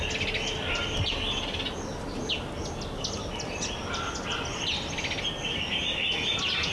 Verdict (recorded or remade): recorded